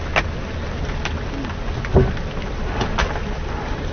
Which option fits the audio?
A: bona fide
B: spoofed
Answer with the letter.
A